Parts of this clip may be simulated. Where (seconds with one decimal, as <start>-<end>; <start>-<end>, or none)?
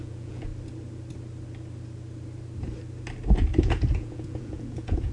0.0-0.5; 3.6-5.1